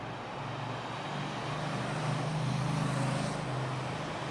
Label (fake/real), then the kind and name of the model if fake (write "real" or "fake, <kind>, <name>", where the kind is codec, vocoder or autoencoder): real